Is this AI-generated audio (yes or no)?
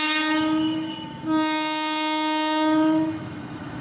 yes